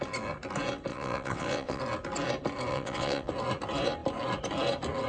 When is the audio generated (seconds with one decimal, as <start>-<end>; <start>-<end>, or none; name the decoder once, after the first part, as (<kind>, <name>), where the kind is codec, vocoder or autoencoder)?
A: 0.9-1.8 (vocoder, WaveNeXt); 2.7-3.3